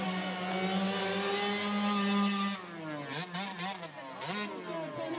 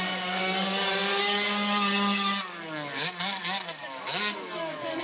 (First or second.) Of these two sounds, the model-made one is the second